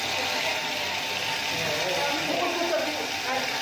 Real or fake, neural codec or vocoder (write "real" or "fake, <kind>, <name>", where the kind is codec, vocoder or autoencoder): real